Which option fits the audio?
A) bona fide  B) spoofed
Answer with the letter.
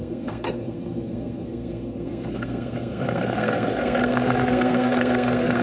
B